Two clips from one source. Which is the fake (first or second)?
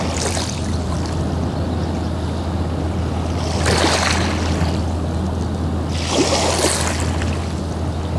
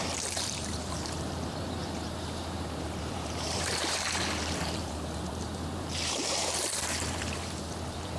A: second